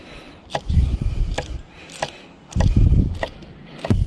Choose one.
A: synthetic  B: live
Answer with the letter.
B